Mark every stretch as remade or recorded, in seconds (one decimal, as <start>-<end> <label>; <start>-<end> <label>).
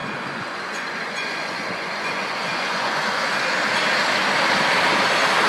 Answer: 0.0-3.3 remade; 3.3-5.5 recorded